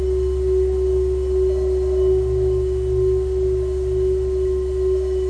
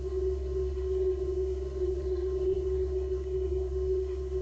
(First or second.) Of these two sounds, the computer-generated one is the second